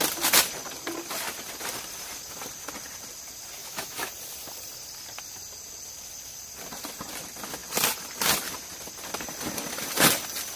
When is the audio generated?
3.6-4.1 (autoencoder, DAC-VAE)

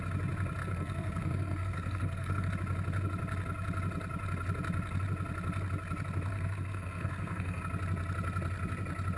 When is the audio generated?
0.6-2.5 (codec, SNAC); 6.3-7.6

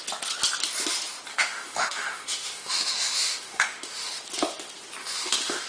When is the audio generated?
1.3-4.1 (autoencoder, DAC-VAE); 5.0-5.7

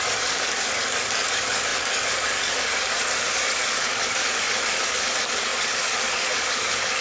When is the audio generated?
0.0-7.0 (codec, DAC)

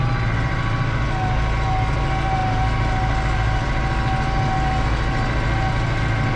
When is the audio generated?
none